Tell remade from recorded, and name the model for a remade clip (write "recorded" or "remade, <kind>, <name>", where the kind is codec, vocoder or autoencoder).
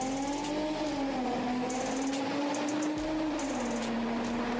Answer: recorded